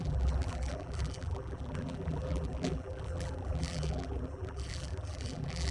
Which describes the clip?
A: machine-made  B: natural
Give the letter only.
A